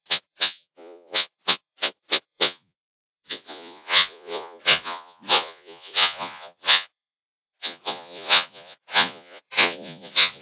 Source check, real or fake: fake